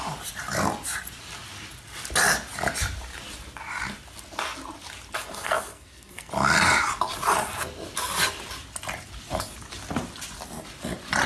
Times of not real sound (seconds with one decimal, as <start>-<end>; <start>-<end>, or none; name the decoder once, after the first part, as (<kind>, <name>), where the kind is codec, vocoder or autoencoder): 5.2-6.3 (codec, SNAC)